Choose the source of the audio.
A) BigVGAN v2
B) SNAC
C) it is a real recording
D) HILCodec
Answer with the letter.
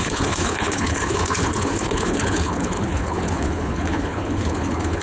D